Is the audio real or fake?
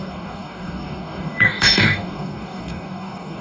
fake